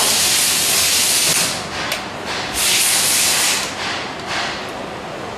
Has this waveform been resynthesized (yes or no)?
yes